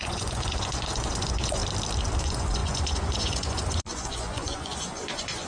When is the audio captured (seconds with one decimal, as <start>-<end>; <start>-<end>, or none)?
1.6-2.2